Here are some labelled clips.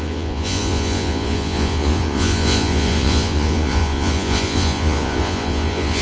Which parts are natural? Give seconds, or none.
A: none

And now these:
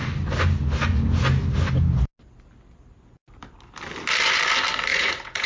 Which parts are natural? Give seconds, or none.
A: 0.0-4.9

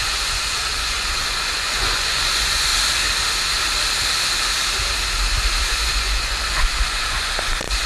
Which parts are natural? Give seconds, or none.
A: 2.7-5.6

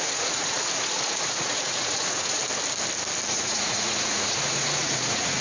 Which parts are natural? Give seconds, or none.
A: 2.4-3.3

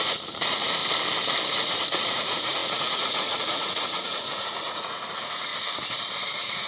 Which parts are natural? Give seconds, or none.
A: 0.8-1.5; 5.5-6.2